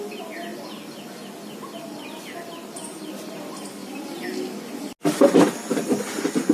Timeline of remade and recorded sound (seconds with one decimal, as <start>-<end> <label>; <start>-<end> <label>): 0.0-6.5 recorded